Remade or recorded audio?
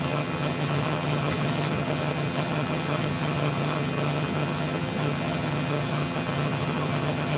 remade